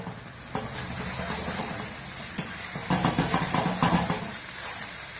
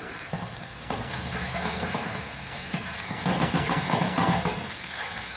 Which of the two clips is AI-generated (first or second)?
second